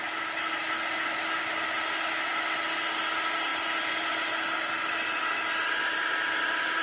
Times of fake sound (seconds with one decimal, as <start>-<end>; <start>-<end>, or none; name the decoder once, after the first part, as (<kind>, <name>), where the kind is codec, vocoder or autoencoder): none